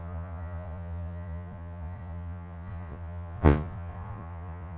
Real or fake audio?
fake